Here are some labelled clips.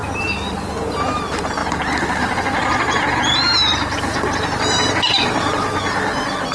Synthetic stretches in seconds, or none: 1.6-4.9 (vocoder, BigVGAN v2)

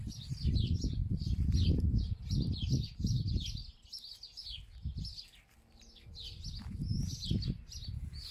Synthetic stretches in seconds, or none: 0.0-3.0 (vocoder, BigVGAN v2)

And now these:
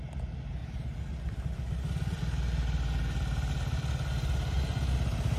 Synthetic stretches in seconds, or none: none

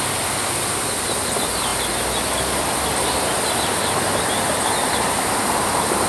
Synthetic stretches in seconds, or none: 4.8-6.1 (vocoder, BigVGAN v2)

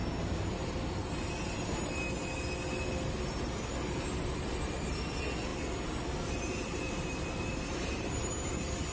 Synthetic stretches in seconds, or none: 4.7-8.9 (vocoder, BigVGAN v2)

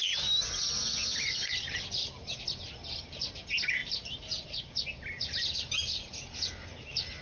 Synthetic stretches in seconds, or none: 1.1-1.9 (vocoder, BigVGAN v2); 3.8-4.7